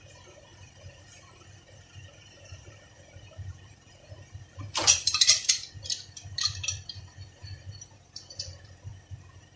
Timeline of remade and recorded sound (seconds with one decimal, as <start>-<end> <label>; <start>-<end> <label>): 0.0-0.5 recorded; 0.5-5.5 remade; 5.5-8.9 recorded; 8.9-9.6 remade